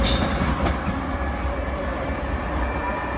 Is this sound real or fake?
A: real